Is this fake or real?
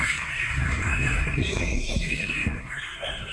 fake